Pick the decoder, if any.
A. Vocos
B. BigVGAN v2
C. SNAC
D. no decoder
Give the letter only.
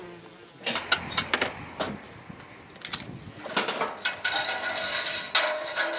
D